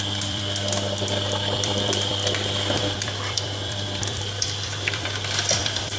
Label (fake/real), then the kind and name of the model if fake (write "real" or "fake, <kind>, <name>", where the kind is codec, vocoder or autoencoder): fake, vocoder, BigVGAN v2